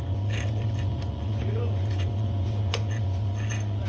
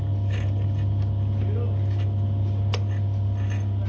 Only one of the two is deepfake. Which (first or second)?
first